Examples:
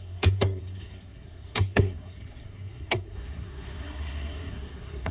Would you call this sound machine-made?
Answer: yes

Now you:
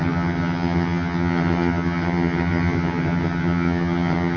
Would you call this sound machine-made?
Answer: yes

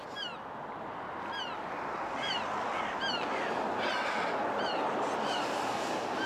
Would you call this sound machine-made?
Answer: no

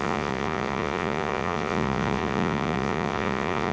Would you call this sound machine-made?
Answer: yes